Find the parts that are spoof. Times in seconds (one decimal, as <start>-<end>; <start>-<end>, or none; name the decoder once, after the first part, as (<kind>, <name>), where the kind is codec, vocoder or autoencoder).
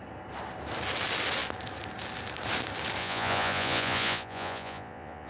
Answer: 3.0-5.3 (vocoder, Vocos)